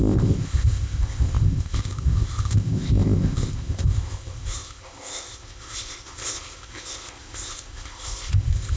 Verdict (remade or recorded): remade